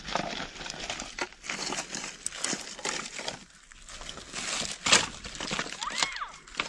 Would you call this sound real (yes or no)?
yes